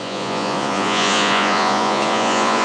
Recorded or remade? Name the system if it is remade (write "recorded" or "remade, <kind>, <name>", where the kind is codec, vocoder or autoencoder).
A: remade, vocoder, Vocos